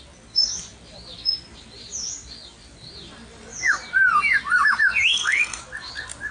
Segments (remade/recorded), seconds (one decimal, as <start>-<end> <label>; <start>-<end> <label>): 0.0-5.1 recorded; 5.1-5.6 remade; 5.6-6.3 recorded